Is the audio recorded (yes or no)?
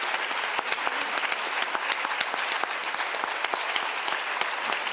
yes